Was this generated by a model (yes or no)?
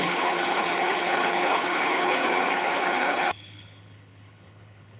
yes